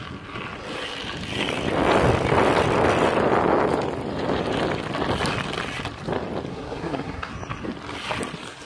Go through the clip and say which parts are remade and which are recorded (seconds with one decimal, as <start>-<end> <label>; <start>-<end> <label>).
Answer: 0.0-6.5 recorded; 6.5-7.3 remade; 7.3-8.6 recorded